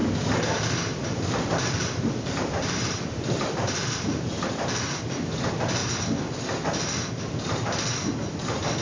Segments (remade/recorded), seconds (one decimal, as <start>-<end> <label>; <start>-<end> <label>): 0.0-5.0 remade; 5.0-8.8 recorded